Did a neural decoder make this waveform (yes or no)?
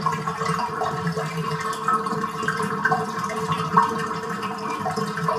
yes